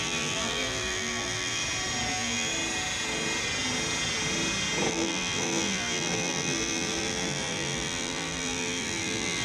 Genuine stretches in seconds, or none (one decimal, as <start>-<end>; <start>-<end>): 1.6-2.1; 2.5-4.9